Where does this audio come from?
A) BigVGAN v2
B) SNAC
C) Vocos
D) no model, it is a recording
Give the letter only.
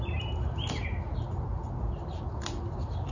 D